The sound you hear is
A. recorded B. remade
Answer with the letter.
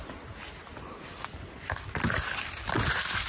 A